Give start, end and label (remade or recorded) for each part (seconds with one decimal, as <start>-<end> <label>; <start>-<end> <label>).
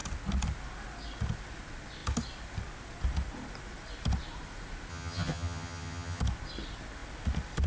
0.0-4.9 recorded; 4.9-6.2 remade; 6.2-7.7 recorded